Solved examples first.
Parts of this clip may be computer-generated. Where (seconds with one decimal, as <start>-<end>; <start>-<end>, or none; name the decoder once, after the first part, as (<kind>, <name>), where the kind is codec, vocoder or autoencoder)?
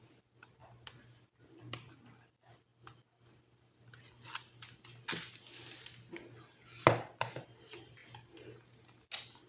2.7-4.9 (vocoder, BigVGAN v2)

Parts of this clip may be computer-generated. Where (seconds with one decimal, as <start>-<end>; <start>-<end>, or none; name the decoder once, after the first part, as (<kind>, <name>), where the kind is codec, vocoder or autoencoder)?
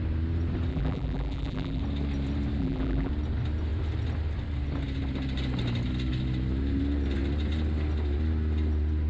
0.7-1.8 (vocoder, BigVGAN v2); 2.6-3.1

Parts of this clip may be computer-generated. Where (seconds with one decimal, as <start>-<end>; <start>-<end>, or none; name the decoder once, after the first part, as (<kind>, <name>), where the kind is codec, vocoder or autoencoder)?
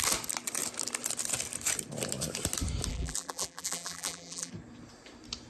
2.9-4.5 (vocoder, BigVGAN v2)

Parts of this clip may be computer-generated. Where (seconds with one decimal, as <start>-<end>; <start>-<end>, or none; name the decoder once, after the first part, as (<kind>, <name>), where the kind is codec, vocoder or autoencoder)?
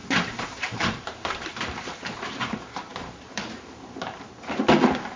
0.0-2.4 (vocoder, BigVGAN v2); 2.9-4.6